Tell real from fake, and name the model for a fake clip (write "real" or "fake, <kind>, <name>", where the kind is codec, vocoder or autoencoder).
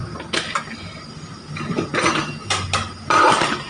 real